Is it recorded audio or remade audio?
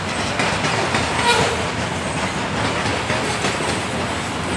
recorded